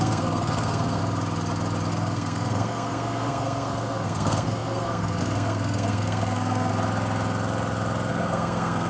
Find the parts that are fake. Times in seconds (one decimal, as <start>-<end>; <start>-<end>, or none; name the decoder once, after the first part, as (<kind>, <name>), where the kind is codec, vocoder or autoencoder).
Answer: 0.0-1.0 (codec, SNAC); 1.9-6.7; 8.1-8.9